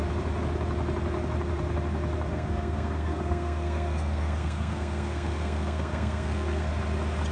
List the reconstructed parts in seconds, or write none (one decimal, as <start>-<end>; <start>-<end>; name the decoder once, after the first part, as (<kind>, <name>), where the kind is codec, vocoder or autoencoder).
2.3-6.7 (codec, SNAC)